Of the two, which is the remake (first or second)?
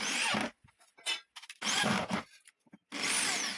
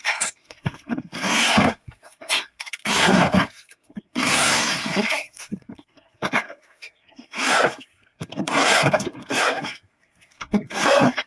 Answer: second